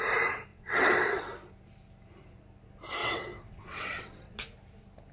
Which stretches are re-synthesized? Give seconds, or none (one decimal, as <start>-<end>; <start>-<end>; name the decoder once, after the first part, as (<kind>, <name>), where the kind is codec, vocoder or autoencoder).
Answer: 0.5-1.2 (vocoder, WaveNeXt); 3.0-4.4

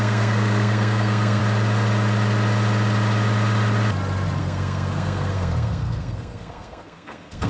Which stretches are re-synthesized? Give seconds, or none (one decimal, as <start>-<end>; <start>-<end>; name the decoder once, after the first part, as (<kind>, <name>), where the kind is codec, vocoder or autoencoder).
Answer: 0.0-1.4 (codec, SNAC); 4.4-7.5

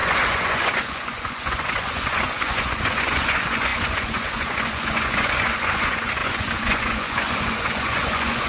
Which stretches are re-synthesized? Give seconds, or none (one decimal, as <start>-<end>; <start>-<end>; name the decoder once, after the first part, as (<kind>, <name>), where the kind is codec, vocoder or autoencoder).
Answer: 0.0-8.5 (vocoder, Vocos)